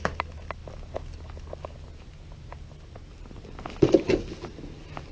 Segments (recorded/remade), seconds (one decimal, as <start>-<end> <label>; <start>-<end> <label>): 0.0-5.1 recorded